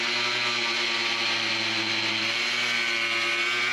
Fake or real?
real